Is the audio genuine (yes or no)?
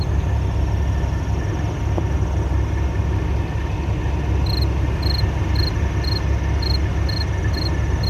yes